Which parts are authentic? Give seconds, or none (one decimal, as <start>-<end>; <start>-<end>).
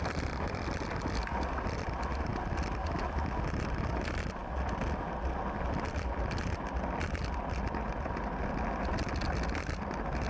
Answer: 0.0-10.3